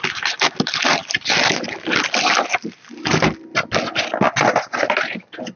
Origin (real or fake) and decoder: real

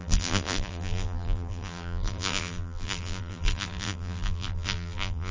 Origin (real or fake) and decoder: fake, vocoder, BigVGAN v2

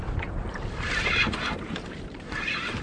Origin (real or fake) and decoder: fake, vocoder, BigVGAN v2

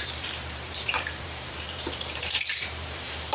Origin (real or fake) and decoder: fake, vocoder, BigVGAN v2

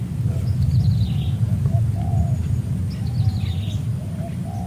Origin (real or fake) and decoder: real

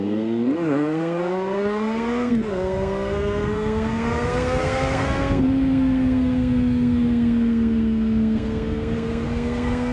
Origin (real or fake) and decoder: fake, codec, SNAC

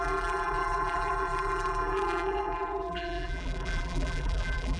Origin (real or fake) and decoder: fake, vocoder, BigVGAN v2